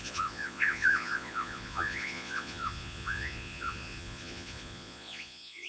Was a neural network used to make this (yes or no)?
yes